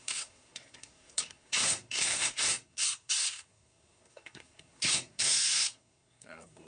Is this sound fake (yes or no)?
yes